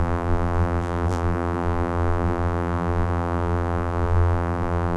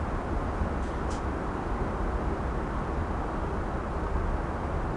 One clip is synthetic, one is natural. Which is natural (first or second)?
second